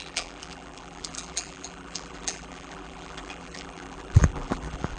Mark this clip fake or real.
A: fake